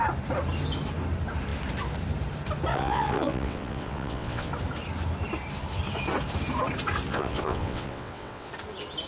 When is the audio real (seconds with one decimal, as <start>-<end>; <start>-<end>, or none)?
0.0-2.7; 4.5-7.1; 8.5-9.1

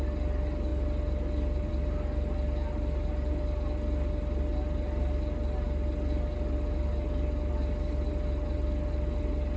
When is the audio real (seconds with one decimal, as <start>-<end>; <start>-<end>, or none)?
0.0-9.6

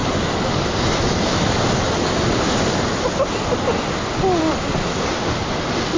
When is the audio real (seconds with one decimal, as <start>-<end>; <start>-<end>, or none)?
0.0-6.0

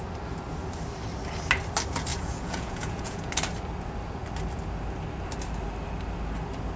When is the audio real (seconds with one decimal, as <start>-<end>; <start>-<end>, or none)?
0.0-2.1; 3.3-6.8

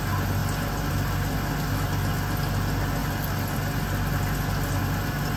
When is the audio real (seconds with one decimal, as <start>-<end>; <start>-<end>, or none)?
0.0-5.4

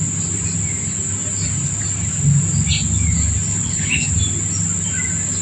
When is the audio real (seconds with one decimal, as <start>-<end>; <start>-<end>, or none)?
0.0-3.5; 4.1-5.4

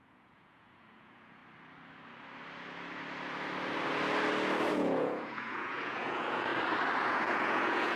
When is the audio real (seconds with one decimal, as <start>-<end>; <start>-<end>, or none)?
1.4-4.7; 6.5-7.1

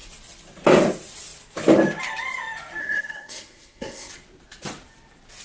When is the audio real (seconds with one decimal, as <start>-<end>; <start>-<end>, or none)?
0.0-2.8; 4.1-5.4